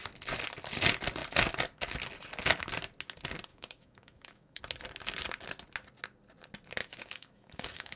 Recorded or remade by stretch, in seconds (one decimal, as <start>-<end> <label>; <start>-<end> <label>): 0.0-3.5 recorded; 3.5-4.6 remade; 4.6-6.8 recorded; 6.8-8.0 remade

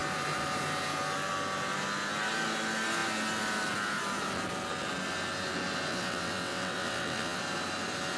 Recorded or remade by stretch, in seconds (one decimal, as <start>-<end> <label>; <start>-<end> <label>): 0.0-5.9 recorded; 5.9-7.4 remade; 7.4-8.2 recorded

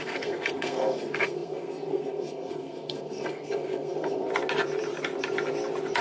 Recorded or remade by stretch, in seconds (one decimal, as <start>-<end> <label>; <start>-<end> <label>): 0.0-4.3 remade; 4.3-6.0 recorded

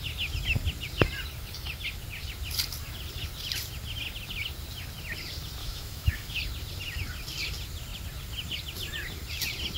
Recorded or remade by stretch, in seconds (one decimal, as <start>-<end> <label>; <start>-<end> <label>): 0.0-5.6 recorded; 5.6-6.4 remade; 6.4-9.8 recorded

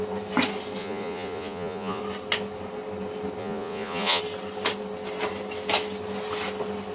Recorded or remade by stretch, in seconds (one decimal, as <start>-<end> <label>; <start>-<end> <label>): 0.0-0.8 recorded; 0.8-2.0 remade; 2.0-3.4 recorded; 3.4-4.2 remade; 4.2-6.9 recorded

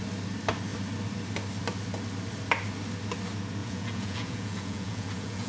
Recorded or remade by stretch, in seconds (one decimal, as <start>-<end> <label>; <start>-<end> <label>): 0.0-3.6 recorded; 3.6-5.5 remade

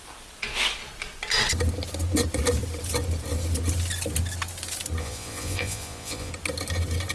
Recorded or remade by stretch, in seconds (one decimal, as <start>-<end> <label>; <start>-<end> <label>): 0.0-5.0 recorded; 5.0-6.3 remade; 6.3-7.1 recorded

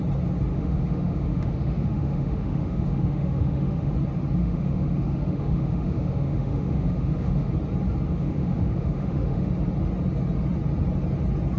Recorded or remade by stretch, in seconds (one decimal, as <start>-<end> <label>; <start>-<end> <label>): 0.0-0.5 recorded; 0.5-3.9 remade; 3.9-4.4 recorded; 4.4-7.5 remade; 7.5-8.1 recorded; 8.1-9.5 remade; 9.5-11.6 recorded